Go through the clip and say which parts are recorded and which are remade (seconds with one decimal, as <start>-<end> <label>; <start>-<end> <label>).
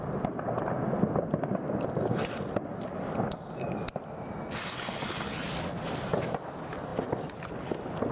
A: 0.0-8.1 recorded